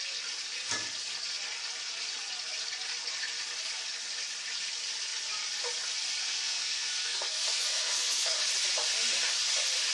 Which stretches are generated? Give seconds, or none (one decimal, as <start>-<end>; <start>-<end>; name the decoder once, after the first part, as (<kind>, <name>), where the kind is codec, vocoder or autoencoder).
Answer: 6.2-8.4 (codec, SNAC)